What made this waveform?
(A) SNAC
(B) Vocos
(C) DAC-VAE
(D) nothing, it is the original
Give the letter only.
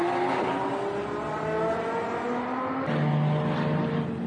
D